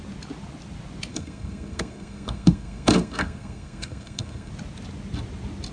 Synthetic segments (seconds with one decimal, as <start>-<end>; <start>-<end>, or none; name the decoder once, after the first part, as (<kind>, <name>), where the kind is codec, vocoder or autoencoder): 1.1-4.5 (codec, SNAC)